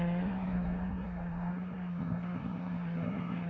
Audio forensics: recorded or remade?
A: remade